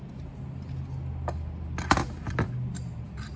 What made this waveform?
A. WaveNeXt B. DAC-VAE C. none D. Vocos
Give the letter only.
C